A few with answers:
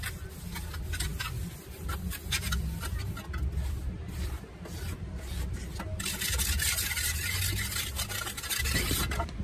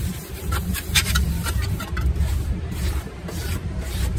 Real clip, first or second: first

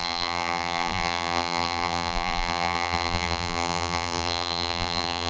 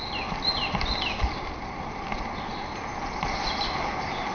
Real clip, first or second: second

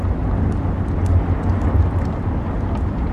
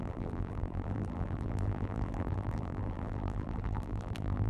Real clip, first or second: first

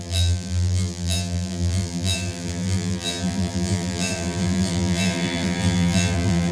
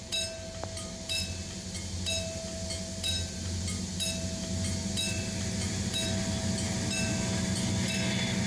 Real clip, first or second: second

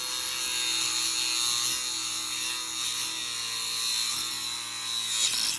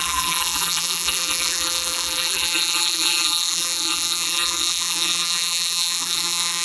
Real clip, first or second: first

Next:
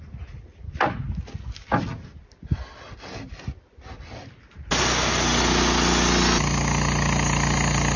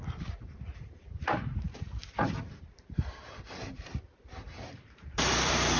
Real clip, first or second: first